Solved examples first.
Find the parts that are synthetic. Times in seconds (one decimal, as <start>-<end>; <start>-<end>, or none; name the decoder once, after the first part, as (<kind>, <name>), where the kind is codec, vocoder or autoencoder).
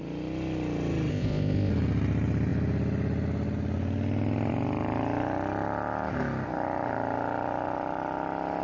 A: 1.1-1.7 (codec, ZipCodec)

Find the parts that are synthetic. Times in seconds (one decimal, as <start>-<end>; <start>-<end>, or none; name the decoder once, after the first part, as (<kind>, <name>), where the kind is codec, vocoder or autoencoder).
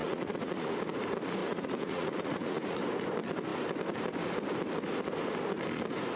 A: 0.0-0.8 (vocoder, Vocos); 1.4-2.8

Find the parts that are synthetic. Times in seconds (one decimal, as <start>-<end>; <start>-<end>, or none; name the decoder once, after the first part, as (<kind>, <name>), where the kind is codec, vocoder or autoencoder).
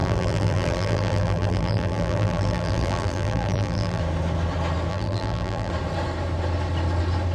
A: 0.0-4.0 (vocoder, BigVGAN v2); 4.9-5.7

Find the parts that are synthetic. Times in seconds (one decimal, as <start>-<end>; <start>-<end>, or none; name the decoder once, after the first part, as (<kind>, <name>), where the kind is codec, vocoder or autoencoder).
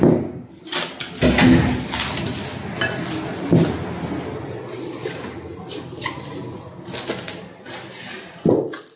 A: none